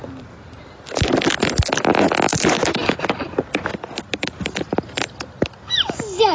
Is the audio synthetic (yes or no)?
no